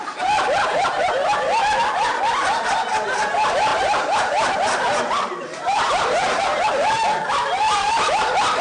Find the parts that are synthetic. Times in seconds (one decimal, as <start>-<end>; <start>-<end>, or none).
none